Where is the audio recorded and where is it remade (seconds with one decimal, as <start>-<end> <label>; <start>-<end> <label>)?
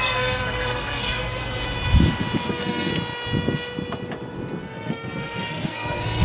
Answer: 0.0-1.4 remade; 1.4-2.5 recorded; 2.5-2.9 remade; 2.9-4.6 recorded; 4.6-6.2 remade